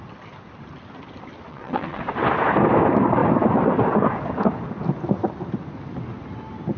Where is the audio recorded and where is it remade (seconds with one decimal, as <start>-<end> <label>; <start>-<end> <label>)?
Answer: 0.0-1.5 recorded; 1.5-2.0 remade; 2.0-6.8 recorded